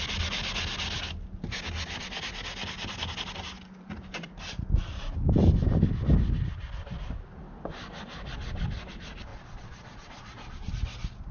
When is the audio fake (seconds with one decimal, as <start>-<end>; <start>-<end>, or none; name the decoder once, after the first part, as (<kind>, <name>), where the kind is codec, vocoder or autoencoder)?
9.3-10.7 (vocoder, Vocos)